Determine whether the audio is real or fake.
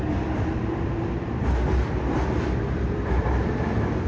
fake